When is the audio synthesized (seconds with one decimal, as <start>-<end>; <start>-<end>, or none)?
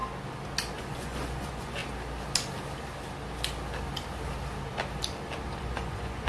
0.8-1.8; 5.6-6.3